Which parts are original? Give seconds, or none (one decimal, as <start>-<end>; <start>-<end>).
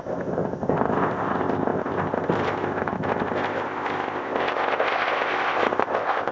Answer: none